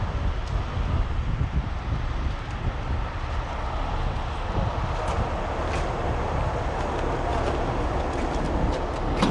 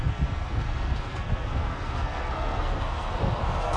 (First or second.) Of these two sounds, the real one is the first